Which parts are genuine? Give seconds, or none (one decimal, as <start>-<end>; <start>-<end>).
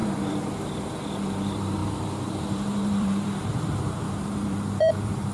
none